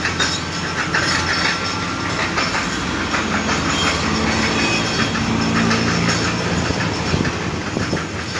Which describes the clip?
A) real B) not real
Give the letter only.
A